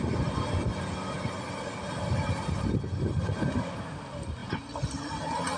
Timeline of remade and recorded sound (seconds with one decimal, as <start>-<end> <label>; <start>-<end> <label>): 0.0-5.6 recorded